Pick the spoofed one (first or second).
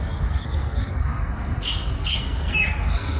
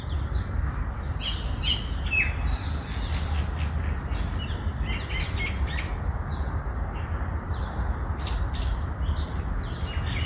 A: first